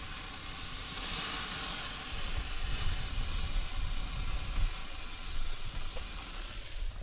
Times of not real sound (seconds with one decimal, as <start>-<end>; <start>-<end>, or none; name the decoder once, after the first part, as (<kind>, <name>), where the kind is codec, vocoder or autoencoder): 4.8-6.0 (vocoder, WaveNeXt)